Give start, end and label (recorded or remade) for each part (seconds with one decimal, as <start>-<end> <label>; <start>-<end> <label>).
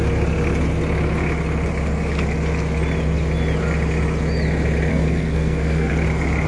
0.0-4.9 recorded; 4.9-5.9 remade; 5.9-6.5 recorded